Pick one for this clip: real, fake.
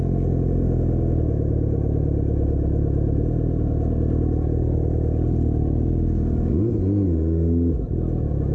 real